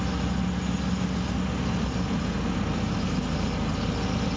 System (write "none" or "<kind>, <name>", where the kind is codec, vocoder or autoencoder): none